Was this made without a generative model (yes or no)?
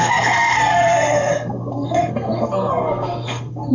no